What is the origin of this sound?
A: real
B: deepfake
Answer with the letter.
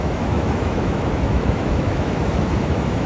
B